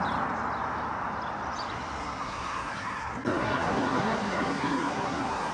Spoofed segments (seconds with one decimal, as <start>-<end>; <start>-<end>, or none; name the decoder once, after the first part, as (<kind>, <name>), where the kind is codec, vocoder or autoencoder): 2.0-5.5 (codec, SNAC)